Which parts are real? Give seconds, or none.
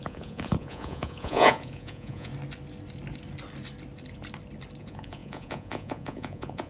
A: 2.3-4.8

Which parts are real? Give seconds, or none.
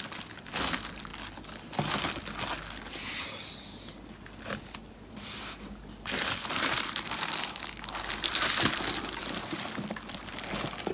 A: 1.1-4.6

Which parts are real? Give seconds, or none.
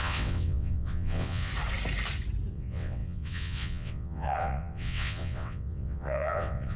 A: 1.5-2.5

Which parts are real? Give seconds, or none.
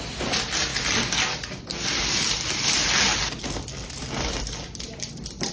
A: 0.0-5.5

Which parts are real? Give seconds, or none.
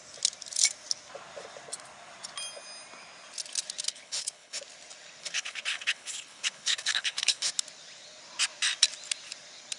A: 0.0-3.9; 4.6-5.2; 7.5-9.8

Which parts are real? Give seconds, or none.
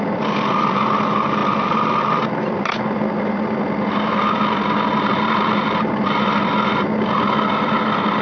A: 0.0-8.2